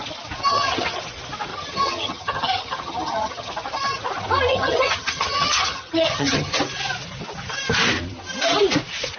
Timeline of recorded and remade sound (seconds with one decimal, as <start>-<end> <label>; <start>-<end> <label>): 0.0-0.5 recorded; 0.5-1.0 remade; 1.0-1.5 recorded; 1.5-3.5 remade; 3.5-4.5 recorded; 4.5-6.5 remade; 6.5-9.2 recorded